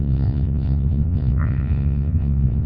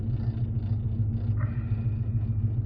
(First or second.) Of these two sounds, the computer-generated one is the first